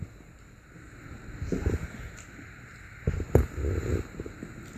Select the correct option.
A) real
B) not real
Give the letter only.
A